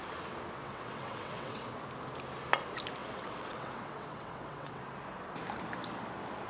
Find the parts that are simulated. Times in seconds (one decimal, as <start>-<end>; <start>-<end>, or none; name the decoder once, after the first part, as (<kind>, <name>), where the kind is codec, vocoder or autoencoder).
0.6-1.7 (vocoder, WaveNeXt); 3.0-4.8